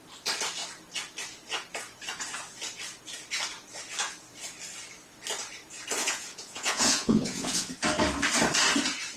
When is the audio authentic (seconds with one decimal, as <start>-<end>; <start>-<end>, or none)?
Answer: 0.0-6.0; 7.7-9.2